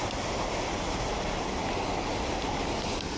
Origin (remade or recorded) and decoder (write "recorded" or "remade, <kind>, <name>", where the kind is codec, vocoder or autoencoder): recorded